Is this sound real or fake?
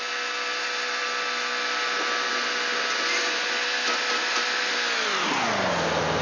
real